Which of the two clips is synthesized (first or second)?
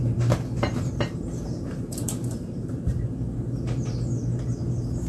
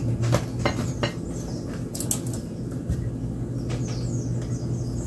first